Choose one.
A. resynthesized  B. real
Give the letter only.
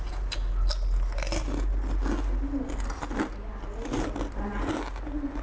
B